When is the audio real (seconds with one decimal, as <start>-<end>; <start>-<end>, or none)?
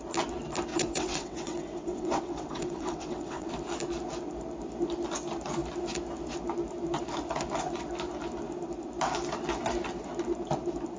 0.0-0.7; 3.5-11.0